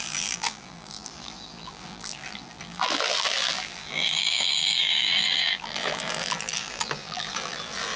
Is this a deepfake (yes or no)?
yes